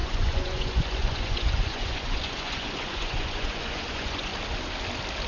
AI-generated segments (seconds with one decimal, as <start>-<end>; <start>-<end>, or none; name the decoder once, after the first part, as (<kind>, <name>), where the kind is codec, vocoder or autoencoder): 0.0-4.3 (vocoder, Vocos)